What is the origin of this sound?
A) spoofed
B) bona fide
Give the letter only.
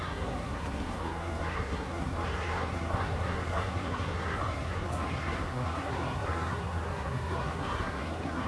A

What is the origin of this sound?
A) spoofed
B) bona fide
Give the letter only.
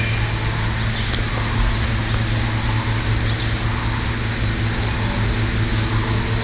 B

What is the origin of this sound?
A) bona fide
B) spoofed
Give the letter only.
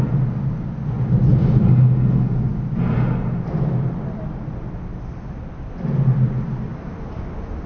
A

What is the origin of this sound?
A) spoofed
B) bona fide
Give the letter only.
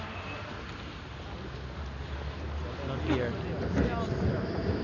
B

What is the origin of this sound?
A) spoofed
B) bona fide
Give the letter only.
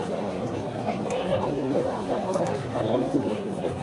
A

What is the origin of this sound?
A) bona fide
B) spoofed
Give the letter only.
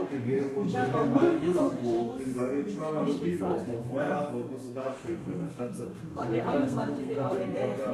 B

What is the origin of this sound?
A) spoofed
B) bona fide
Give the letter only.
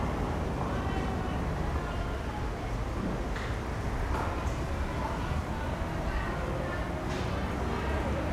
B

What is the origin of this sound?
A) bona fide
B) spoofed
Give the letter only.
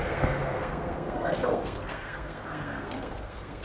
B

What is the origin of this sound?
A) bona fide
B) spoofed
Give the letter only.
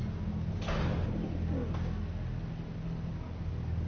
A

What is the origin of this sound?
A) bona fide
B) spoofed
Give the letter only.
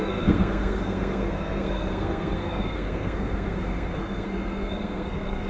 B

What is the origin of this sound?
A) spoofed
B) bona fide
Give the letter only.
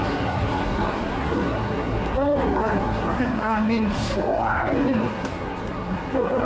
A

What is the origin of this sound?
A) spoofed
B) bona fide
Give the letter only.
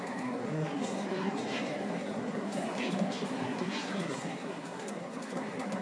A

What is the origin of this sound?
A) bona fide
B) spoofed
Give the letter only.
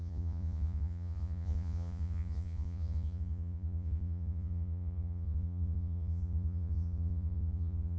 B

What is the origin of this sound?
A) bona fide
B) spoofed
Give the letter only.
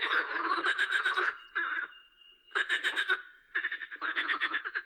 B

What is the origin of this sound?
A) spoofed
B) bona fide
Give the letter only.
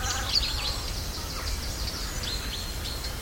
B